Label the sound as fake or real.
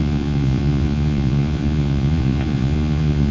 fake